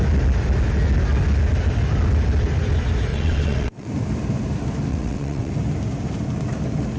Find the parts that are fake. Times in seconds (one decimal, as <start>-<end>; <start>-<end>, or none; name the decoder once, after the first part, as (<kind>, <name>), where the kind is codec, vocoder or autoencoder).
3.1-3.9 (vocoder, WaveNeXt); 4.9-5.5